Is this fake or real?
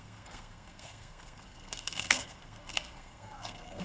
fake